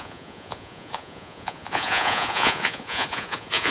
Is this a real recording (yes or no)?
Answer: no